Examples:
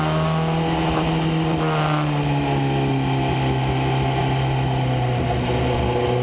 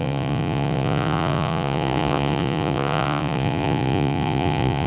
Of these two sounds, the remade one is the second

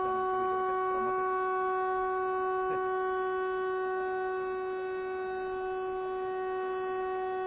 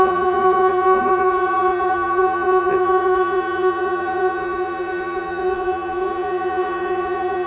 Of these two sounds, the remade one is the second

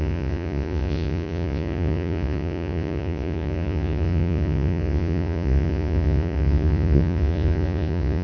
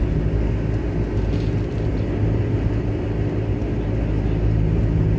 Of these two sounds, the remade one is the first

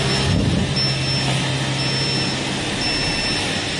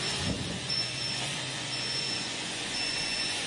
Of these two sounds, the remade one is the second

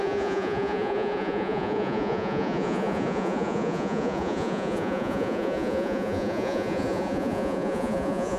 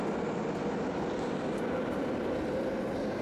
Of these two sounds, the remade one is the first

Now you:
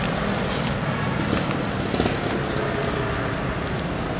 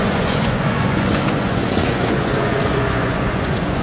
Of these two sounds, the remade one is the second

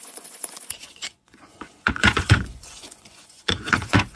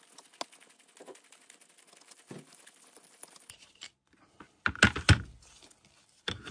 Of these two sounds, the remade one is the first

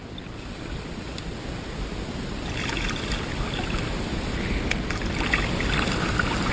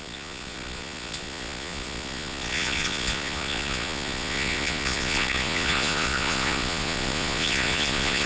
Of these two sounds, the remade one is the second